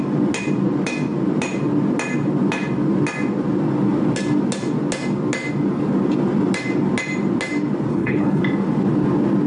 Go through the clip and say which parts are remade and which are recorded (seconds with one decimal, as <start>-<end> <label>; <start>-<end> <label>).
0.0-7.9 recorded; 7.9-8.4 remade; 8.4-9.5 recorded